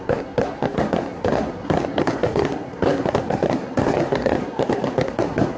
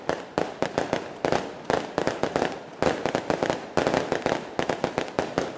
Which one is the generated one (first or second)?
first